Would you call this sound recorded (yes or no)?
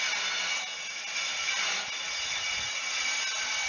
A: yes